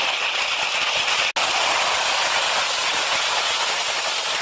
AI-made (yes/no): no